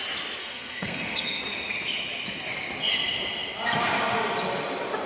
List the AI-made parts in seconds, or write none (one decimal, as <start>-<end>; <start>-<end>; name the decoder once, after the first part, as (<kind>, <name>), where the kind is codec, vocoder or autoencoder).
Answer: 0.4-1.4 (codec, SNAC)